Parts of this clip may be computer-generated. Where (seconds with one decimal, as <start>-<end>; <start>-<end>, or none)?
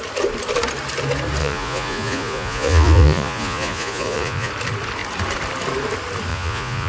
1.4-4.5; 6.3-6.9